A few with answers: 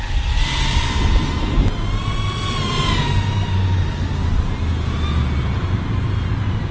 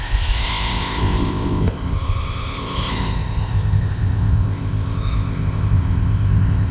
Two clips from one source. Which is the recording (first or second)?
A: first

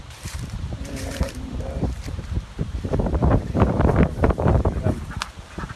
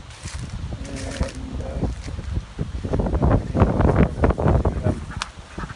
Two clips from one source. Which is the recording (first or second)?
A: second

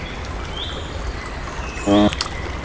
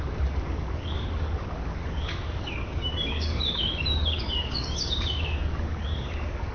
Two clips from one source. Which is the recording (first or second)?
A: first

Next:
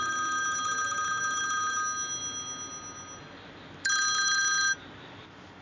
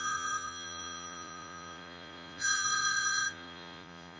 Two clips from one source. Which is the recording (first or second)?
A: first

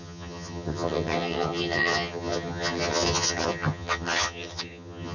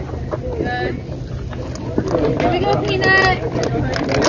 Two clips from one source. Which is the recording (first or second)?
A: second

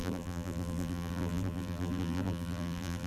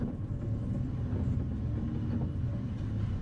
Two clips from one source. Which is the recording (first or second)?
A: second